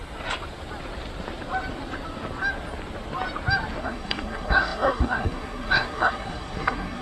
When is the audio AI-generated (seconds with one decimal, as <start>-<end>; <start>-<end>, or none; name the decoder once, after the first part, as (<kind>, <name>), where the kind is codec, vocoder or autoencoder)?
3.8-7.0 (codec, SNAC)